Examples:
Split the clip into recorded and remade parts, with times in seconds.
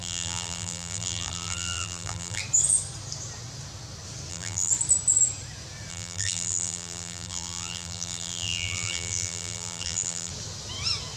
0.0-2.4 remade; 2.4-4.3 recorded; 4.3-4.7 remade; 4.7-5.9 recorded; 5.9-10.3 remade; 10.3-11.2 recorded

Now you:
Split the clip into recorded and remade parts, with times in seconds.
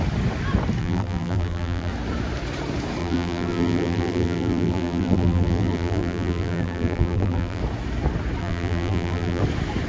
0.0-0.8 recorded; 0.8-1.9 remade; 1.9-3.0 recorded; 3.0-7.6 remade; 7.6-8.4 recorded; 8.4-9.4 remade; 9.4-9.9 recorded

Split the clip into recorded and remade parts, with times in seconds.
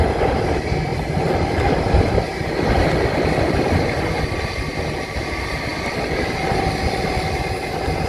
0.0-8.1 remade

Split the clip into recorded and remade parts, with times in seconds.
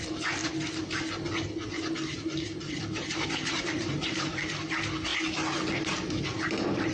0.0-0.4 remade; 0.4-2.6 recorded; 2.6-5.1 remade; 5.1-5.9 recorded; 5.9-6.9 remade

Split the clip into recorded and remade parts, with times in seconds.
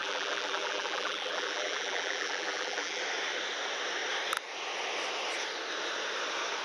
0.0-3.0 remade; 3.0-6.6 recorded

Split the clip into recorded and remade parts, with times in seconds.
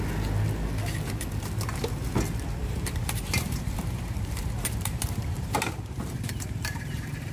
0.0-2.6 recorded; 2.6-7.3 remade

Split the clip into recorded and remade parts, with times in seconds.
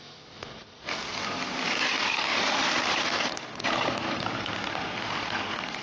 0.0-0.6 recorded; 0.6-1.5 remade; 1.5-2.3 recorded; 2.3-3.3 remade; 3.3-5.8 recorded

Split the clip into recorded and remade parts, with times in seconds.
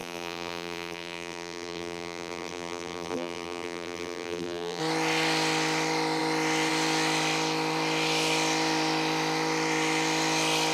0.0-4.8 remade; 4.8-10.7 recorded